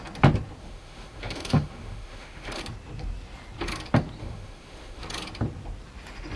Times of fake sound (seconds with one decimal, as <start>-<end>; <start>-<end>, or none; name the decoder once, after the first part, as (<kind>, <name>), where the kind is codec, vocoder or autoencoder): 0.6-2.6 (autoencoder, DAC-VAE); 4.2-5.0